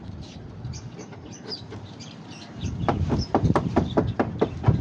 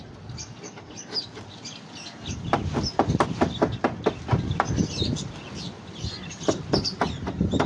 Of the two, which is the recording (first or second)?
second